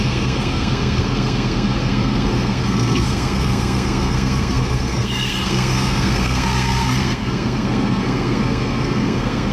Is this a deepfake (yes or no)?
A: yes